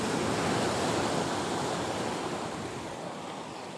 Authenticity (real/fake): real